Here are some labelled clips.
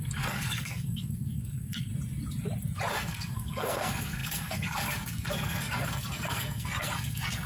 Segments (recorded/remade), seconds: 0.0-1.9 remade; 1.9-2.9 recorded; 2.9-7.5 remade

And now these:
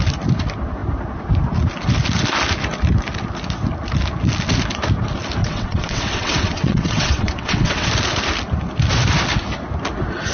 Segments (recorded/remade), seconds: 0.0-5.4 recorded; 5.4-7.9 remade; 7.9-10.3 recorded

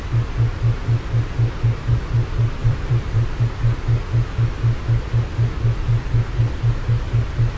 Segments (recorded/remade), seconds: 0.0-2.6 recorded; 2.6-3.4 remade; 3.4-7.6 recorded

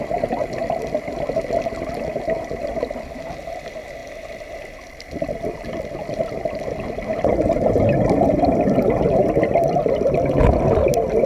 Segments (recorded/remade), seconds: 0.0-7.1 remade; 7.1-8.4 recorded; 8.4-11.3 remade

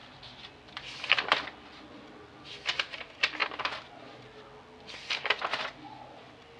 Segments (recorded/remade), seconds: 0.0-6.6 recorded

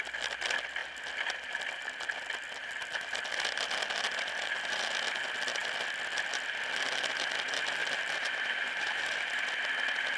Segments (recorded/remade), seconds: 0.0-7.8 recorded; 7.8-9.4 remade; 9.4-10.2 recorded

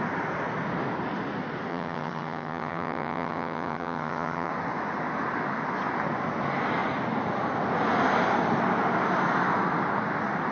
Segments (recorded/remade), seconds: 0.0-1.7 recorded; 1.7-4.5 remade; 4.5-10.5 recorded

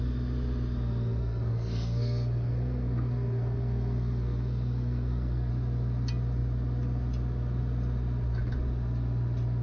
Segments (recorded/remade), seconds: 0.0-1.2 recorded; 1.2-5.5 remade; 5.5-9.6 recorded